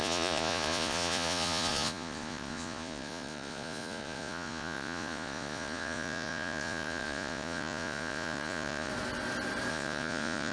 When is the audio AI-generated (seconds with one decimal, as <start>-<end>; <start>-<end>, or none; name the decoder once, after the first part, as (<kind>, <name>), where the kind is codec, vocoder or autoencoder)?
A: 0.0-8.9 (vocoder, Vocos); 9.7-10.5